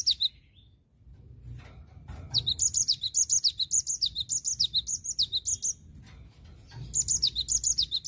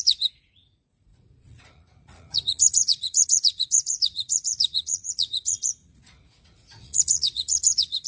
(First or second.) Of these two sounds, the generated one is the second